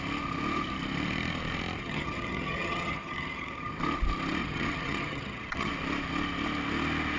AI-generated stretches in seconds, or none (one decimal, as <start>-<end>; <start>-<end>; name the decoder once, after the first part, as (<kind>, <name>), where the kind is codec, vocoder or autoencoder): 1.8-3.7 (vocoder, HiFi-GAN); 4.4-5.7